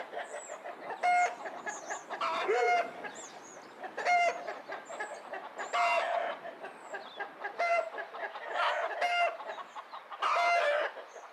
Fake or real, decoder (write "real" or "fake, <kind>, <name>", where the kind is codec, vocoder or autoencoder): real